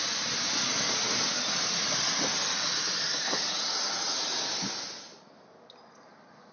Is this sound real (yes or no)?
yes